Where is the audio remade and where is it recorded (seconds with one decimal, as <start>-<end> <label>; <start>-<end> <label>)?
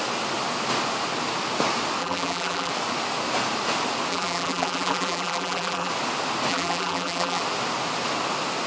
0.0-2.0 recorded; 2.0-2.7 remade; 2.7-4.1 recorded; 4.1-5.9 remade; 5.9-6.5 recorded; 6.5-7.4 remade; 7.4-8.7 recorded